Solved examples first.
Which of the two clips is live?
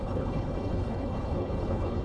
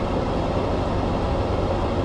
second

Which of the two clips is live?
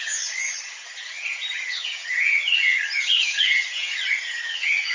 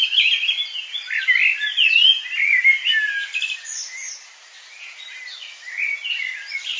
second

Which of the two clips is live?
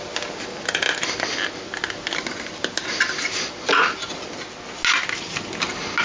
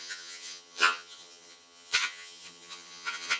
first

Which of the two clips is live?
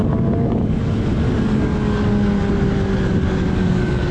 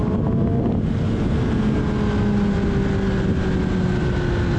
second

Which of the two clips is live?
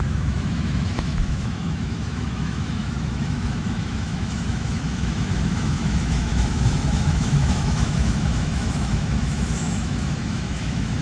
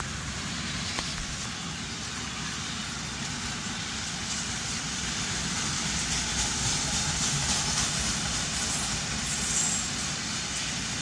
second